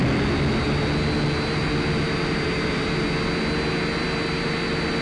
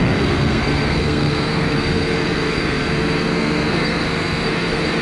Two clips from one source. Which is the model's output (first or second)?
second